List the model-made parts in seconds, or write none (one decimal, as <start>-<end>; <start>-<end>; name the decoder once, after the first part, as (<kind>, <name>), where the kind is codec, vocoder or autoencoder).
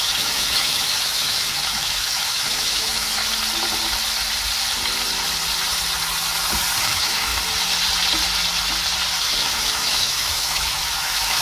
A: 0.0-3.2 (autoencoder, DAC-VAE); 6.8-7.3; 9.2-11.4